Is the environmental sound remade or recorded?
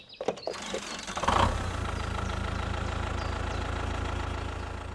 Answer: recorded